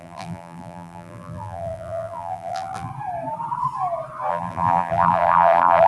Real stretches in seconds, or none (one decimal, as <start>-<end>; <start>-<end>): 2.9-4.3